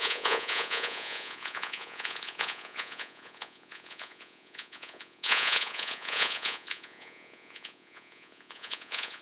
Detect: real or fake fake